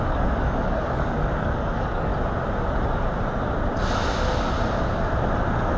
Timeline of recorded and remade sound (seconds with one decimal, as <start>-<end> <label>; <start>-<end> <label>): 0.0-2.1 remade; 2.1-5.8 recorded